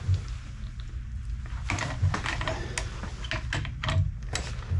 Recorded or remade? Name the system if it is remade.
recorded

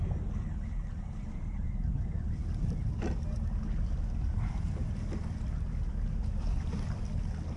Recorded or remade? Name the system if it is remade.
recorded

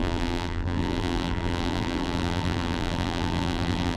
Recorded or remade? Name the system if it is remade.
remade, vocoder, BigVGAN v2